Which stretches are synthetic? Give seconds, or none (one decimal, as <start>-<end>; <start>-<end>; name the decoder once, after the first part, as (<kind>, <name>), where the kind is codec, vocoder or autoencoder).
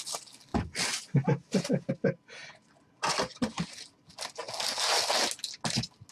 none